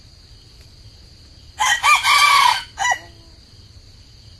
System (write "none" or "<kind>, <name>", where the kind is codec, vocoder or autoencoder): none